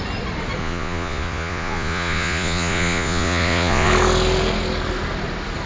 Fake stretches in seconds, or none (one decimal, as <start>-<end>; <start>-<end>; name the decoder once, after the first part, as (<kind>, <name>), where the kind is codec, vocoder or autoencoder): 0.6-3.9 (vocoder, Vocos)